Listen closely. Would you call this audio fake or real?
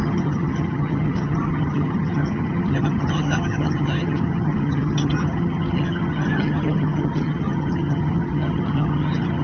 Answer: fake